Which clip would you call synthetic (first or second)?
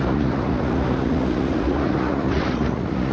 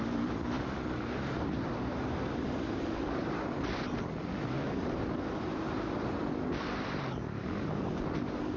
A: first